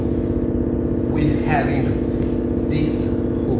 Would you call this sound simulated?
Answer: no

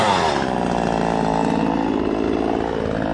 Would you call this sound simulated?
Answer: no